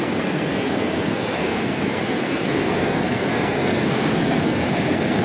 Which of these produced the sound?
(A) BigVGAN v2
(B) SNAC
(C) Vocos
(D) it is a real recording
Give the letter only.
B